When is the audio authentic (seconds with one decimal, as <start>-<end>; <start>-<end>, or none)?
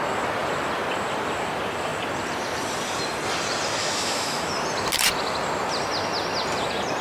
0.0-3.8; 4.5-7.0